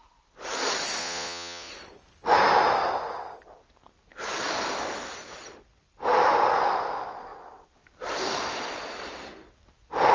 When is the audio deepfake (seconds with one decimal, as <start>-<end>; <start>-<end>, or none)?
1.0-1.7